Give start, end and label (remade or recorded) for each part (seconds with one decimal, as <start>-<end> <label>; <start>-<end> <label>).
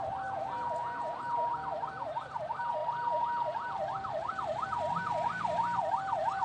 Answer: 0.0-6.4 recorded